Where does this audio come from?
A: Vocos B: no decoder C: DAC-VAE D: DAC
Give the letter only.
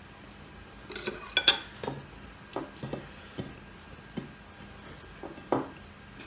B